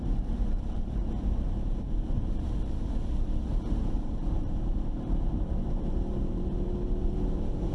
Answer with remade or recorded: remade